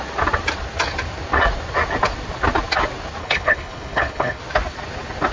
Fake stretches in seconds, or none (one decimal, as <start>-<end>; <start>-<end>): 3.2-4.4